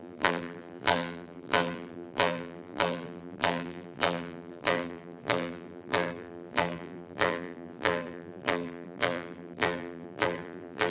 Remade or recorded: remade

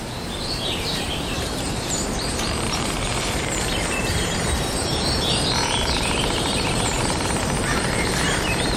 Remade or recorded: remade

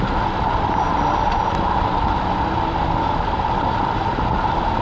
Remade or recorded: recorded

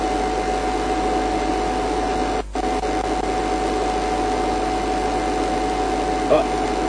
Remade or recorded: recorded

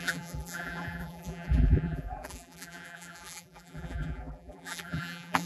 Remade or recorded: remade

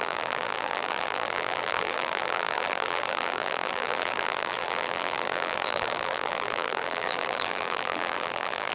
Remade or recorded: remade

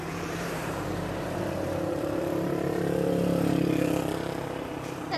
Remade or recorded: remade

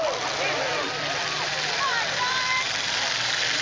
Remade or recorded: remade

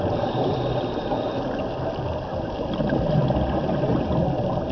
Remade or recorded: recorded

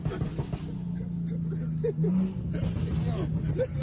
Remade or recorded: recorded